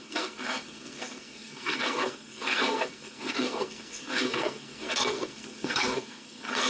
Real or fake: fake